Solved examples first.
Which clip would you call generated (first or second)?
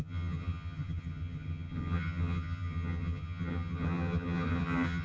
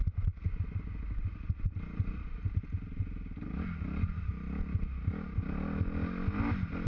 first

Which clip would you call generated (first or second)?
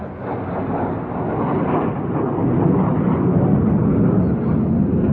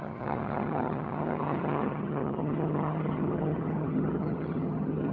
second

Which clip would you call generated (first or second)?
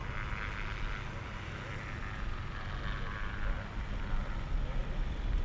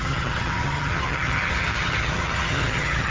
second